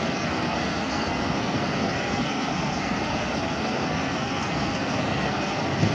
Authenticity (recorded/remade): remade